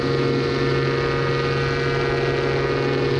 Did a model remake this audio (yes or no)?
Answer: no